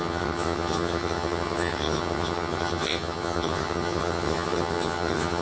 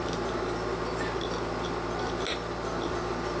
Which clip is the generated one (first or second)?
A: first